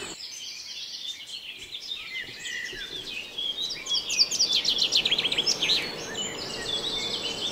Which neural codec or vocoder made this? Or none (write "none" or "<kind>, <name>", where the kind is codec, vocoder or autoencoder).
none